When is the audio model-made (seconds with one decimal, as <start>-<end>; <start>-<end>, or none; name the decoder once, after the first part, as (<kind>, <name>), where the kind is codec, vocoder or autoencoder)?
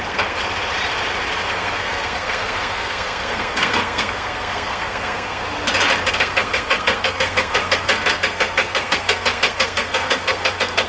0.0-0.4 (codec, SNAC); 1.5-5.4; 6.1-10.9